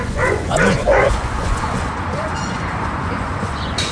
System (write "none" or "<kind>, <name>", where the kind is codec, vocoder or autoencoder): vocoder, Vocos